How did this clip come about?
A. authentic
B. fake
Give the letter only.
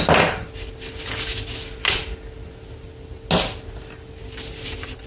A